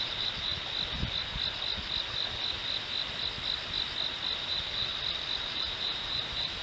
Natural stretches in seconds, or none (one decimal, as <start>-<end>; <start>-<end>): 0.5-4.4; 4.9-5.4

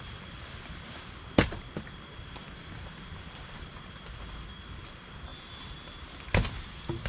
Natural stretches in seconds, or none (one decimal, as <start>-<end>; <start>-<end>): 0.0-5.3